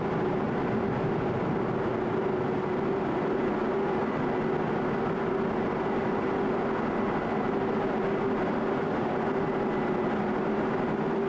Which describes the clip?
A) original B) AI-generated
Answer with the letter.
A